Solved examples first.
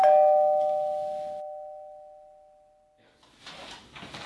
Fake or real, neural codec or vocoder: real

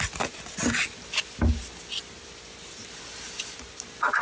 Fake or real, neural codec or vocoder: real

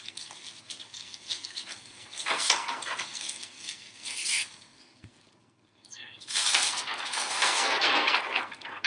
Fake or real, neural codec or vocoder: fake, codec, SNAC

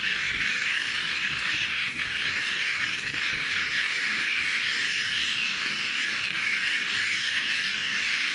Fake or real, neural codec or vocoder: fake, codec, DAC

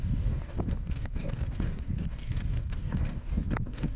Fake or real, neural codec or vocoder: fake, codec, DAC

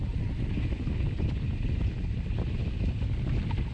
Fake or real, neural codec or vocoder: real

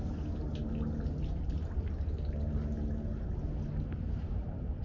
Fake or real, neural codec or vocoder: real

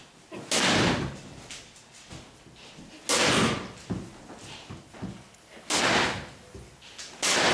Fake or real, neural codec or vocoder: real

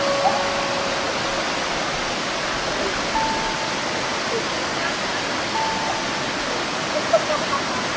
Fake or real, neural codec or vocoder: real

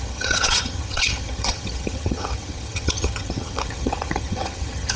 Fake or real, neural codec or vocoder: fake, vocoder, HiFi-GAN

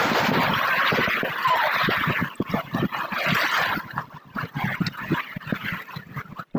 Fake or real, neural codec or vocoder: fake, vocoder, BigVGAN v2